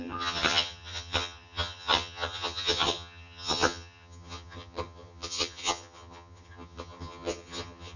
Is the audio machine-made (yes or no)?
yes